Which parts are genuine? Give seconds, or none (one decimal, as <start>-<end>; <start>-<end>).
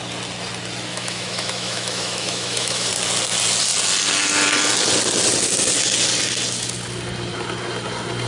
0.0-0.9; 2.9-8.3